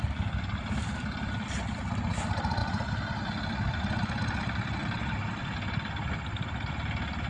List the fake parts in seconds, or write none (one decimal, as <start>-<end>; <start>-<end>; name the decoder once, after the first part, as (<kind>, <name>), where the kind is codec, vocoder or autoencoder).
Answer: none